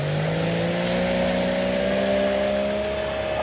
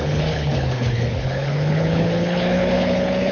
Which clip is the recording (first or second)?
first